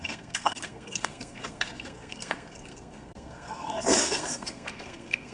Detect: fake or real fake